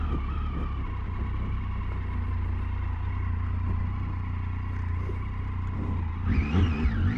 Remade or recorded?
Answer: recorded